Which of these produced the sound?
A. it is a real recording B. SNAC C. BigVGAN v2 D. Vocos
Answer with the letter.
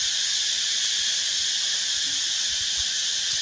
A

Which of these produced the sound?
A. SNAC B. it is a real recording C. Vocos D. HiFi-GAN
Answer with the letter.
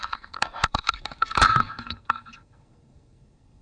A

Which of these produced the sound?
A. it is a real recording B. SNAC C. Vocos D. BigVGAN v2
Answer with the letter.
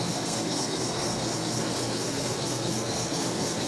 B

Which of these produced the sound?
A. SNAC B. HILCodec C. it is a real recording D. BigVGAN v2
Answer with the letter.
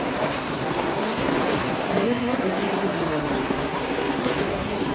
A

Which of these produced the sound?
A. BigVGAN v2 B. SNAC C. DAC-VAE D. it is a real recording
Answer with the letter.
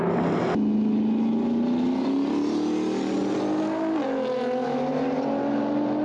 D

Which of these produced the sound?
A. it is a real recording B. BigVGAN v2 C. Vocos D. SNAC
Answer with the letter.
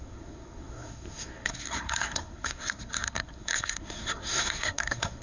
D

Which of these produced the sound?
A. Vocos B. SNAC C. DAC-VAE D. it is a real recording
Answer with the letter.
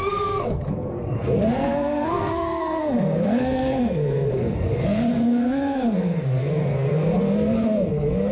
B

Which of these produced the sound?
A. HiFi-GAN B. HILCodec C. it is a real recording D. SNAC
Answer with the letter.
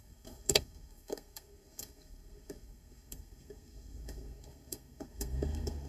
D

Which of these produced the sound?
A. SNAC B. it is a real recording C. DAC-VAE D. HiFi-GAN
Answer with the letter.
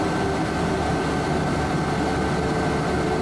B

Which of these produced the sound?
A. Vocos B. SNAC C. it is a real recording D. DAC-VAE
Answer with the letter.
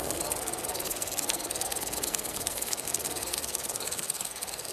B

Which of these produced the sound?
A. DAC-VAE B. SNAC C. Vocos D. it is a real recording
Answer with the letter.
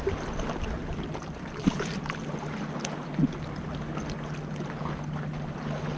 D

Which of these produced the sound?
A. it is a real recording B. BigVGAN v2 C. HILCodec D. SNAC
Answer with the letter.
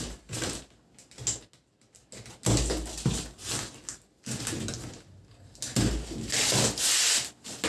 A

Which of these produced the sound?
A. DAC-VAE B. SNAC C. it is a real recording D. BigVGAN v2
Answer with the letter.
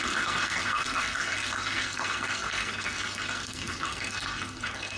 B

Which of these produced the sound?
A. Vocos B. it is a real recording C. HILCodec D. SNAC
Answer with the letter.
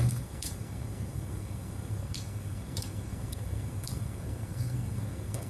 D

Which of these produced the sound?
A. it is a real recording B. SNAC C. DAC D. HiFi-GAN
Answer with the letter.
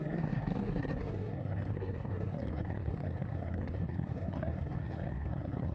B